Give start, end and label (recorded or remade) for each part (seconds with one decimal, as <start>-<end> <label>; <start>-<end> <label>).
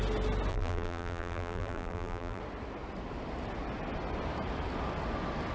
0.0-0.5 recorded; 0.5-2.4 remade; 2.4-5.5 recorded